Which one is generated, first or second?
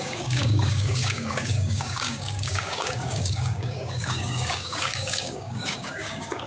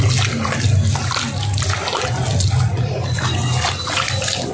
first